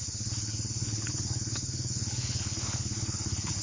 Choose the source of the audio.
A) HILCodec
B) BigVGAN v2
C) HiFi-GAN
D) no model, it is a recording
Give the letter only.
A